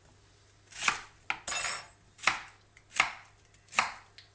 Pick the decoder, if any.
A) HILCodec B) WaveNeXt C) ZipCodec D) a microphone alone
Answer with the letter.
D